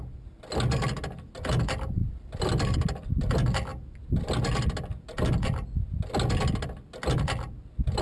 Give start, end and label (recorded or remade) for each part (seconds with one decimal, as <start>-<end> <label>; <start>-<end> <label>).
0.0-2.0 recorded; 2.0-2.7 remade; 2.7-8.0 recorded